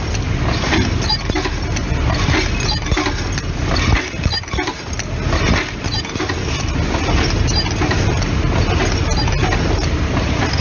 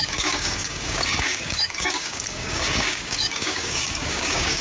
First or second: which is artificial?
second